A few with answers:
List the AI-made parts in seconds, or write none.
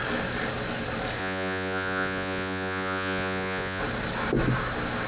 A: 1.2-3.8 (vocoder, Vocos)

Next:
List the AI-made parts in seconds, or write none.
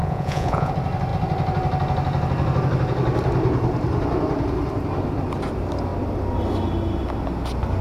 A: 0.0-0.7 (vocoder, Vocos)